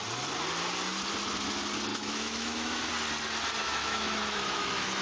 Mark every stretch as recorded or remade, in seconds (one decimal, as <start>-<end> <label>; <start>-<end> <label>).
0.0-1.9 recorded; 1.9-2.9 remade; 2.9-3.6 recorded; 3.6-5.0 remade